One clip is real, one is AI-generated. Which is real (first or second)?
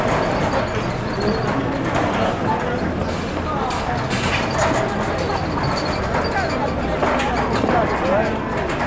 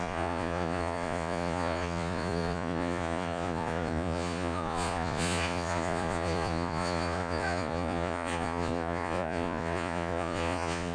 first